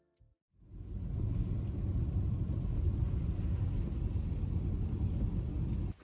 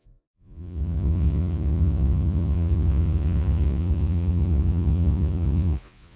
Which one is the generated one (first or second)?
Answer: second